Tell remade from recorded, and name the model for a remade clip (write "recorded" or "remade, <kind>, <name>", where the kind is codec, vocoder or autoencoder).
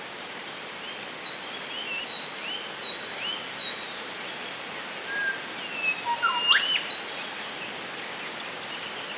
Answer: recorded